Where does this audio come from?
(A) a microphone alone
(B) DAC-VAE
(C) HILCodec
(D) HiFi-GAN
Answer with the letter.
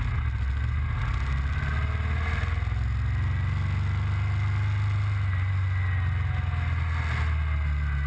A